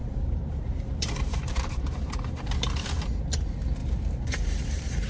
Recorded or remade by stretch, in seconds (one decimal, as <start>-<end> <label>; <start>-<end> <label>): 0.0-3.1 remade; 3.1-3.8 recorded; 3.8-5.1 remade